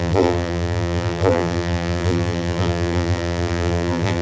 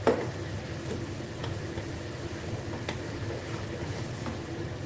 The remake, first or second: first